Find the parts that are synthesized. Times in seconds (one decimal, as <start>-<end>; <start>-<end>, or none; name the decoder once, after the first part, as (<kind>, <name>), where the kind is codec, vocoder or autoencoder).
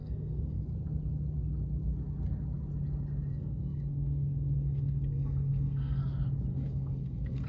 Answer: 0.0-0.6 (codec, SNAC); 3.3-6.0; 6.5-7.5